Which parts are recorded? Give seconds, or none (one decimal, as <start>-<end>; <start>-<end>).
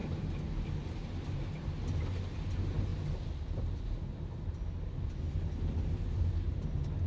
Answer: 0.0-7.1